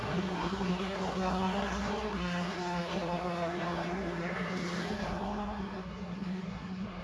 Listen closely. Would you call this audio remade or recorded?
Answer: remade